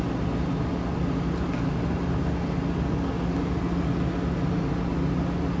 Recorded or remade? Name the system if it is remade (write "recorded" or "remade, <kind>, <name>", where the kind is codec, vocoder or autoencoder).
recorded